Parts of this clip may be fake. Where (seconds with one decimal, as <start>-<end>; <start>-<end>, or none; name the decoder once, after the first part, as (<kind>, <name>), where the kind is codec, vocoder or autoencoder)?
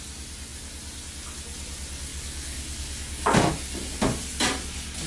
2.1-3.5 (codec, DAC)